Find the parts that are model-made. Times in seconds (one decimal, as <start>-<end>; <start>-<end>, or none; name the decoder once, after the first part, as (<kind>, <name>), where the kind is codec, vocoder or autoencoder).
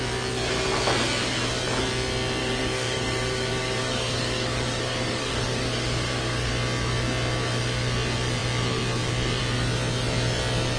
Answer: 2.4-6.5 (codec, DAC)